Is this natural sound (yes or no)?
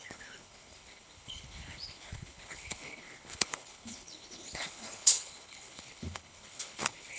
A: no